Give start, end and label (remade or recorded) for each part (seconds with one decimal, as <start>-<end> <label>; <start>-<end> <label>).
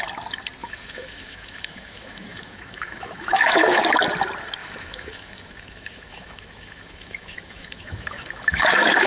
0.0-0.6 recorded; 0.6-3.8 remade; 3.8-4.6 recorded; 4.6-9.1 remade